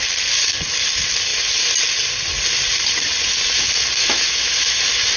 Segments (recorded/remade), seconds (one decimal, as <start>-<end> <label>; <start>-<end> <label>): 0.0-4.0 recorded; 4.0-4.8 remade; 4.8-5.2 recorded